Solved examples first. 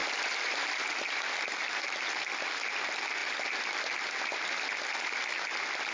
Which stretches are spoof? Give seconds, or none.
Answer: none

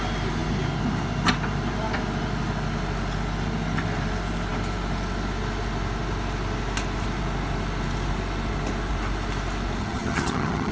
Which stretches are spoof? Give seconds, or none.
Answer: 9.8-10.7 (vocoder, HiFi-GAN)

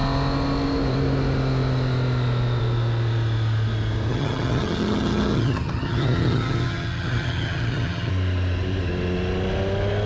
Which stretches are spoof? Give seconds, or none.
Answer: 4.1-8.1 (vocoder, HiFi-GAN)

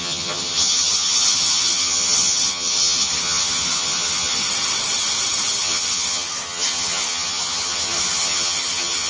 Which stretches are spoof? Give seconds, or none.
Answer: 0.0-4.4 (vocoder, HiFi-GAN); 5.6-9.1

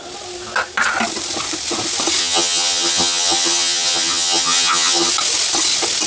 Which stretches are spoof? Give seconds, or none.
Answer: 2.2-5.1 (vocoder, HiFi-GAN)